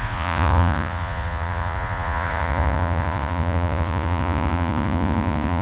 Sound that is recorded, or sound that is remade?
remade